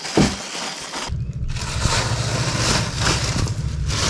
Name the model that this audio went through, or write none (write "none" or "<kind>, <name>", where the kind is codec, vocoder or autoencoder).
none